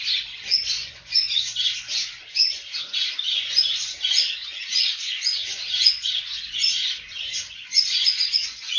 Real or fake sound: fake